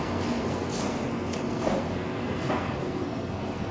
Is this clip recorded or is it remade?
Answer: remade